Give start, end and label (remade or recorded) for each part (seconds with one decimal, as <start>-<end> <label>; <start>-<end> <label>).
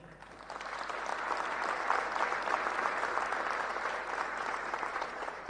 0.0-4.9 recorded; 4.9-5.5 remade